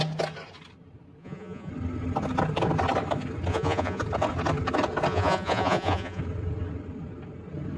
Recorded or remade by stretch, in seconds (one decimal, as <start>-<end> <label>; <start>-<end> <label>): 0.0-1.2 recorded; 1.2-1.7 remade; 1.7-3.5 recorded; 3.5-4.0 remade; 4.0-5.1 recorded; 5.1-6.2 remade; 6.2-7.8 recorded